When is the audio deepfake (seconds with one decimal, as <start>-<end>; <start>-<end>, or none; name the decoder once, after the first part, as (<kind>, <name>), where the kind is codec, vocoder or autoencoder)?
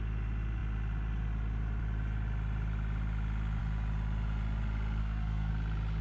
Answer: 5.0-5.5 (codec, SNAC)